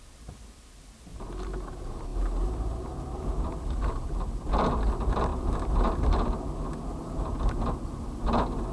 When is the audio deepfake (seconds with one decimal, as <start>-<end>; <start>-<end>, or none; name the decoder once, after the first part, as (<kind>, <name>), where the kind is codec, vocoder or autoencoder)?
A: none